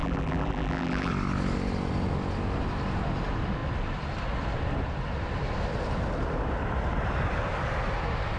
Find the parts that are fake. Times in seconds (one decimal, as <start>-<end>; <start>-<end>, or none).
0.0-1.1